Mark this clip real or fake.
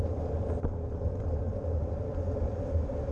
real